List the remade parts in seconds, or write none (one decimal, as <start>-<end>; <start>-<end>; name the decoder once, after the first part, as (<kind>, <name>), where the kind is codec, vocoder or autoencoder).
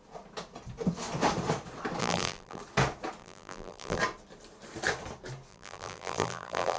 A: 2.0-2.6 (vocoder, BigVGAN v2); 3.2-4.0; 5.5-6.8